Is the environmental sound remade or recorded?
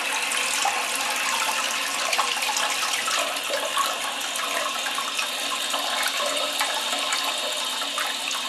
recorded